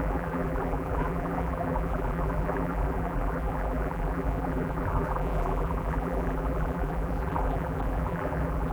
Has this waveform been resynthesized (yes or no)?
yes